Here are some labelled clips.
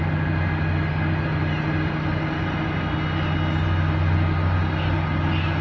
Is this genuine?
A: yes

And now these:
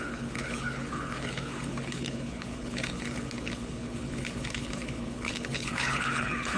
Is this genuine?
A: no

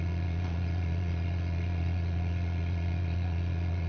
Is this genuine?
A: no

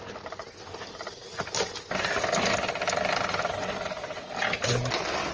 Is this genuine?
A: yes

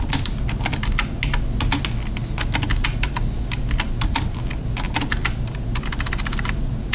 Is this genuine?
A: yes